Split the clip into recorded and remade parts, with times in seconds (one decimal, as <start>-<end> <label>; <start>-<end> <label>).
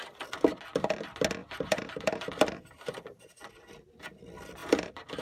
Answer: 0.0-1.4 recorded; 1.4-3.4 remade; 3.4-4.6 recorded; 4.6-5.2 remade